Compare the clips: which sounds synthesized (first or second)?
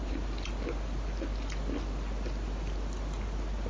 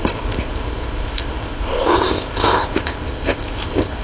second